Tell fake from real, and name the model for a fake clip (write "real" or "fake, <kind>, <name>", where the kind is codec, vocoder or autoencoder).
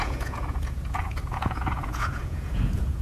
fake, vocoder, Vocos